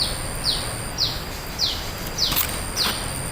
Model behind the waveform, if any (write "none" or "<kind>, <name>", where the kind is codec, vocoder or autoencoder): none